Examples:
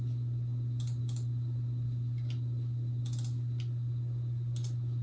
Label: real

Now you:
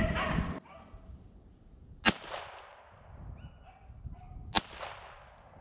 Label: real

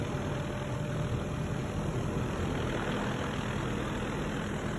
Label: real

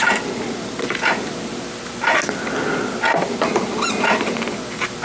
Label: real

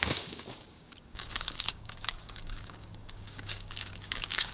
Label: fake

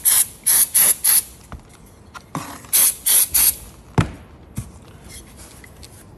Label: real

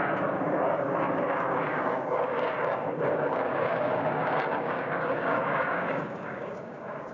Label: fake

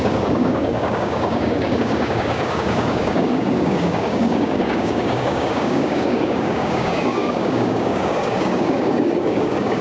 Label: fake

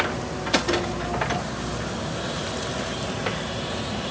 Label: real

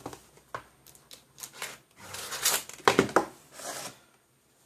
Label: real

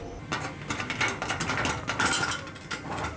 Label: real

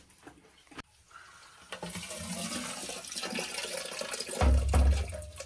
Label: real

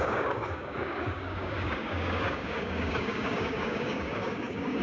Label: fake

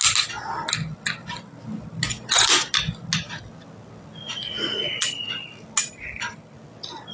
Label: real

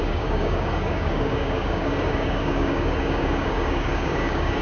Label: fake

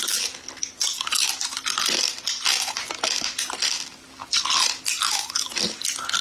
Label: real